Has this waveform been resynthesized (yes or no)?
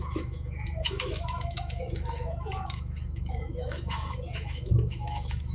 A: yes